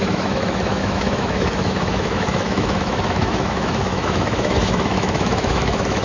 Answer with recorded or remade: remade